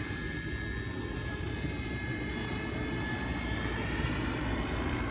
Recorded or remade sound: recorded